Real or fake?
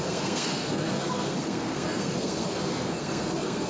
fake